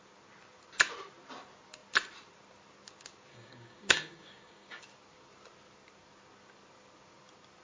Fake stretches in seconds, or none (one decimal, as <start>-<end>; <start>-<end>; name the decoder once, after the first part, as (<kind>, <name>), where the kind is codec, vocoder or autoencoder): 3.3-4.8 (codec, DAC)